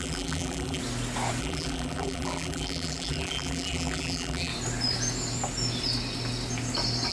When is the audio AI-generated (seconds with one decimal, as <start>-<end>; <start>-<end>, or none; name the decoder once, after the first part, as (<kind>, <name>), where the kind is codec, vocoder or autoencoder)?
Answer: 0.0-0.8 (vocoder, BigVGAN v2); 1.4-4.5

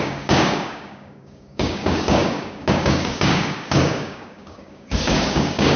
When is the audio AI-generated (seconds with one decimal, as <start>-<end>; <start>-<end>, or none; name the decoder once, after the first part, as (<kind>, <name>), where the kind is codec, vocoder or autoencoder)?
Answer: 0.0-5.8 (codec, DAC)